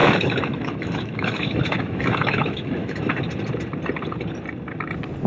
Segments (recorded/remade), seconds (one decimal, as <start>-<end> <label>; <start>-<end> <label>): 0.0-3.2 remade; 3.2-5.3 recorded